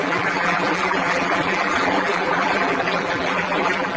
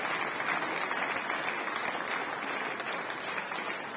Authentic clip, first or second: second